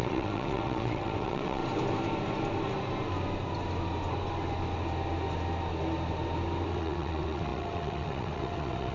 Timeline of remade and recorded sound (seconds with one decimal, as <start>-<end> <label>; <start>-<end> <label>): 0.0-1.6 remade; 1.6-6.7 recorded; 6.7-8.9 remade